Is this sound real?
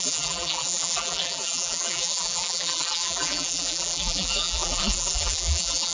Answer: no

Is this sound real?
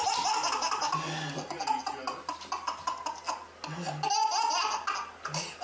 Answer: yes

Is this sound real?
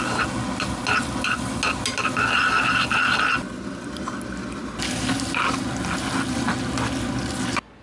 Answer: yes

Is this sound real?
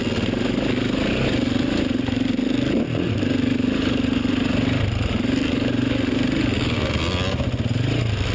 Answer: yes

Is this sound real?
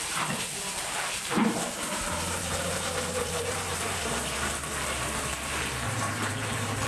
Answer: no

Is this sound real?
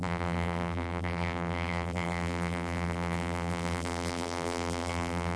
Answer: no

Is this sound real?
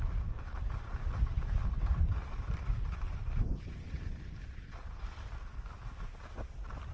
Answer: no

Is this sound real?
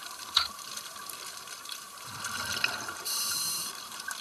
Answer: no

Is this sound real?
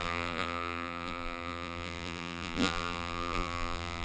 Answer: no